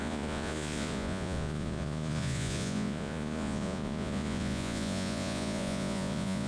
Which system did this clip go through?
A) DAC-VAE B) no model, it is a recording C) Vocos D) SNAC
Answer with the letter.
C